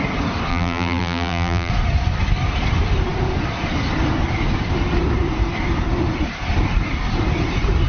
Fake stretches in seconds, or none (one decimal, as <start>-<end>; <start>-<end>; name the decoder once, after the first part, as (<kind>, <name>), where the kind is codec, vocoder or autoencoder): 0.5-1.7 (vocoder, BigVGAN v2)